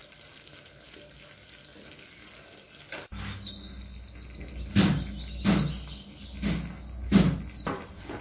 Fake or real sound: real